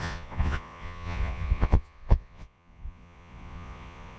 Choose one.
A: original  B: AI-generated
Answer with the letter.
B